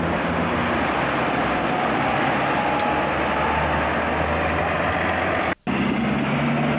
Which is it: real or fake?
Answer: real